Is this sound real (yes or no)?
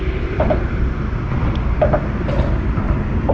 yes